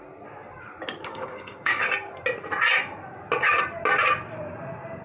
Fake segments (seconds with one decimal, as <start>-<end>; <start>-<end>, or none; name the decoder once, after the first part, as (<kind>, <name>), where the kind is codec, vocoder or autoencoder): 1.1-1.8 (codec, DAC)